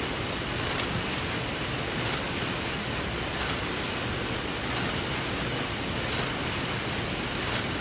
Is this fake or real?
real